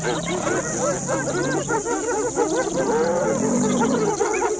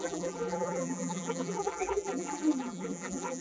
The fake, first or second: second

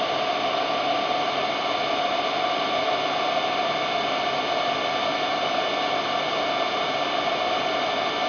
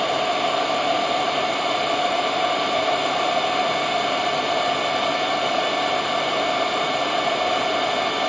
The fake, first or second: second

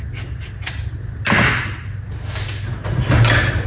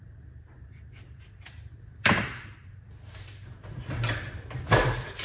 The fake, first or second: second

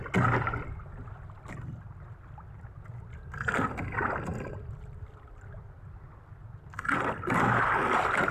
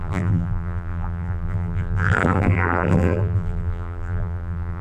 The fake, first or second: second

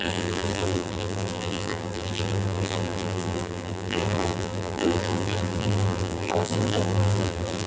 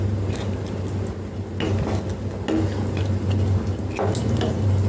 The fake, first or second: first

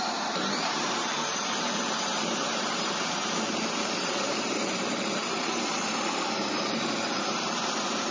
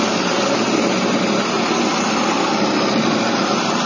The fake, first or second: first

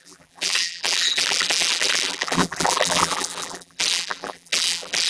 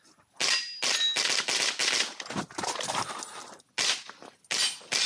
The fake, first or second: first